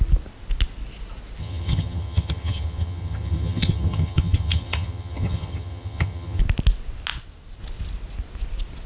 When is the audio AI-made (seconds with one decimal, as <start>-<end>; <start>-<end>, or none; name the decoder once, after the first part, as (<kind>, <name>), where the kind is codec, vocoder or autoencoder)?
1.4-6.4 (vocoder, HiFi-GAN)